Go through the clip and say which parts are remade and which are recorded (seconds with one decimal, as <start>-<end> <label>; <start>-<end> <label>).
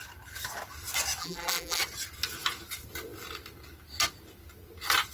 0.0-1.2 recorded; 1.2-1.8 remade; 1.8-5.1 recorded